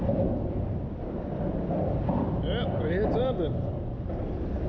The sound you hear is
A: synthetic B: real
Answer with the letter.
B